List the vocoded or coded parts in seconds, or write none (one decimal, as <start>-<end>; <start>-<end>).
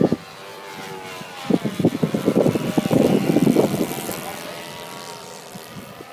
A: 0.0-6.1